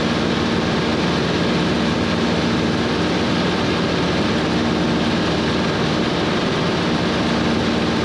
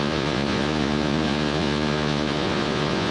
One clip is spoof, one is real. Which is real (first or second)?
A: first